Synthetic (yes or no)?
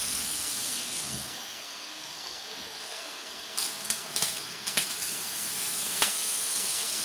yes